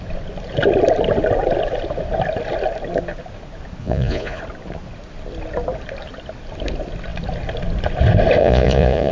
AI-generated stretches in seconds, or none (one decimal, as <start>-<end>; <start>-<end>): 3.8-4.4; 8.4-9.1